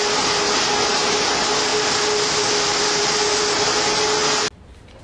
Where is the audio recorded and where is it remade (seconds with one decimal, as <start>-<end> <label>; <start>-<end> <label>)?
0.0-5.0 recorded